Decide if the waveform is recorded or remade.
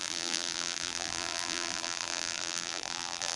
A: remade